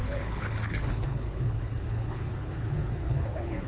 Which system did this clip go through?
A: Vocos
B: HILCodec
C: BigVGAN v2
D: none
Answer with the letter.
B